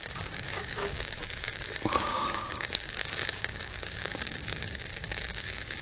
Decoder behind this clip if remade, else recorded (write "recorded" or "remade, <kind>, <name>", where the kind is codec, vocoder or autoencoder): remade, codec, DAC